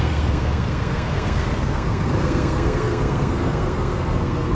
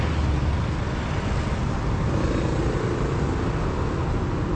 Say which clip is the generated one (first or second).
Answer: first